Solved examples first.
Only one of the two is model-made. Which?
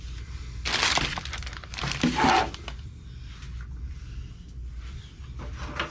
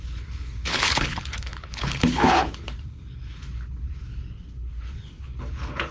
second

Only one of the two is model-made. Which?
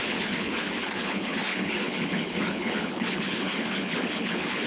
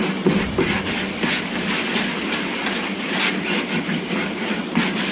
first